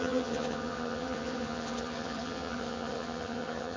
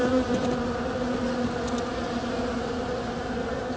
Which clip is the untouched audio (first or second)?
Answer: second